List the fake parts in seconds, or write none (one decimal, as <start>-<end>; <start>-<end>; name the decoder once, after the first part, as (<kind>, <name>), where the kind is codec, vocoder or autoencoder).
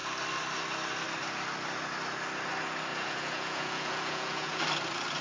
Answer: 2.9-4.6 (vocoder, Vocos)